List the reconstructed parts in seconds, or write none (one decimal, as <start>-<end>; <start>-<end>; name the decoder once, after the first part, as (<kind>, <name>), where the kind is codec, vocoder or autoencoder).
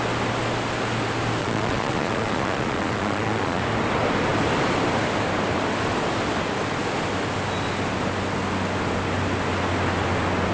1.4-3.6 (vocoder, Vocos)